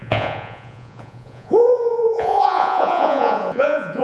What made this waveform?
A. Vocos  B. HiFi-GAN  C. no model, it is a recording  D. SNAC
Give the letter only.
A